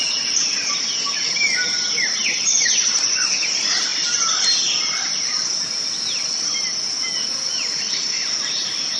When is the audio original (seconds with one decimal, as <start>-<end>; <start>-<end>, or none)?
0.0-9.0